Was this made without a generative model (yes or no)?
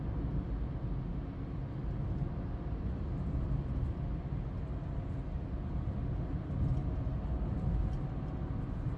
yes